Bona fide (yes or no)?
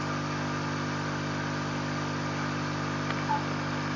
yes